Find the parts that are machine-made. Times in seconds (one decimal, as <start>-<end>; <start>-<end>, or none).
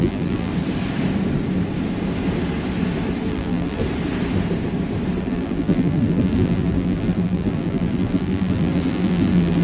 0.0-0.5; 3.3-3.8; 5.2-9.6